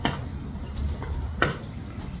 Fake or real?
real